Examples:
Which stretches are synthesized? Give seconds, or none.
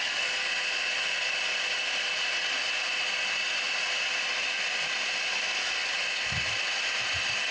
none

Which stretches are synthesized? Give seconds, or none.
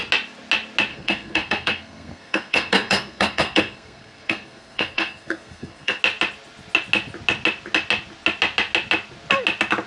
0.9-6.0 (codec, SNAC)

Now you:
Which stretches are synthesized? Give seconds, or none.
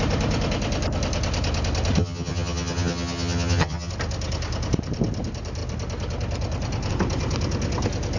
2.0-3.9 (vocoder, HiFi-GAN)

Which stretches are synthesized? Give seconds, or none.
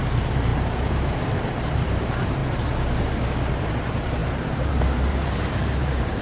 0.0-2.4 (vocoder, BigVGAN v2); 3.5-6.2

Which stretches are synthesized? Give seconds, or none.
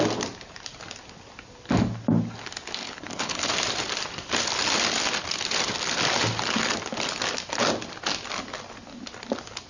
2.8-3.5 (codec, HILCodec)